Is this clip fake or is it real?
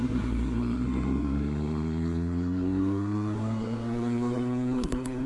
fake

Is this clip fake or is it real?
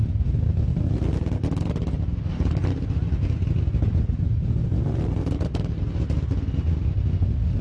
real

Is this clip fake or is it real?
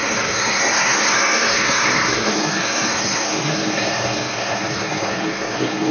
fake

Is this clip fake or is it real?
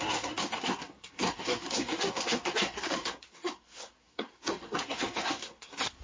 fake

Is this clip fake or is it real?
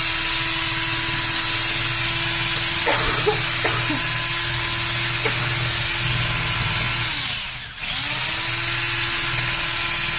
real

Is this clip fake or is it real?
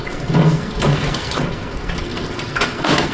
fake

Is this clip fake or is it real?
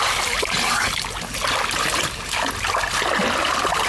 real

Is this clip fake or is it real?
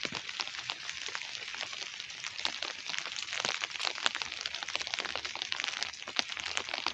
real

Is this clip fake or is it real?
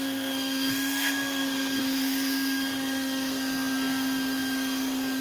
fake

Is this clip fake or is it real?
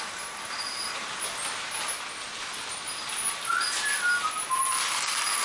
real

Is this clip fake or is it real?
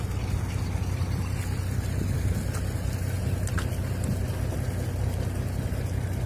real